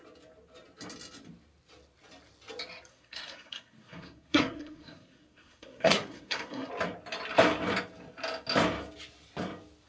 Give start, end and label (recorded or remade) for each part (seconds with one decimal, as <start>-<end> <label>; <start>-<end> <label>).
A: 0.0-2.9 recorded; 2.9-6.7 remade; 6.7-9.9 recorded